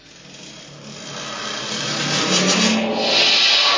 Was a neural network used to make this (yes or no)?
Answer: no